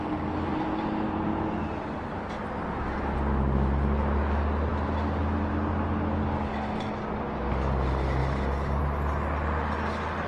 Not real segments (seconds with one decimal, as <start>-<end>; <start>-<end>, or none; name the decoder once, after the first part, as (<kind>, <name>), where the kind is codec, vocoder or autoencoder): none